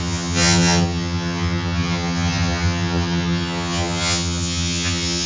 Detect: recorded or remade remade